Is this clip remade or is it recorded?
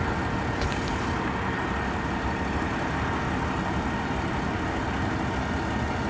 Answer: recorded